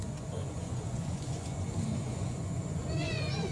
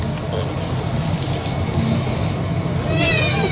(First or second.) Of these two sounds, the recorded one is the second